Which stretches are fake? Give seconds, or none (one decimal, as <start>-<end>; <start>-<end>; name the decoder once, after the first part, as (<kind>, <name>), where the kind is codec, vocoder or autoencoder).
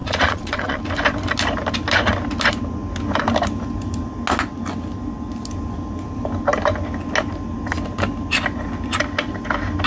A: 0.0-0.8 (vocoder, Vocos)